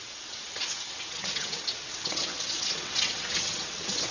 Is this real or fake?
fake